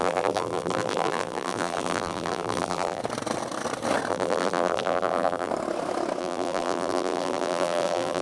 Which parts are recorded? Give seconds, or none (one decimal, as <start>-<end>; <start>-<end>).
3.0-4.1; 5.5-6.2

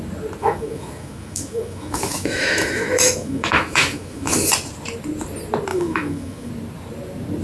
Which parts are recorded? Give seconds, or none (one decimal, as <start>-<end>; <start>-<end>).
0.0-0.4; 4.5-5.7; 6.5-7.4